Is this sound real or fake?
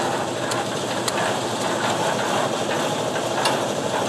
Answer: fake